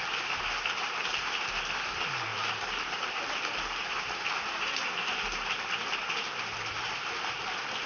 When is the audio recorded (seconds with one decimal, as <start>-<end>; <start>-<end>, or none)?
0.0-2.3; 4.2-7.9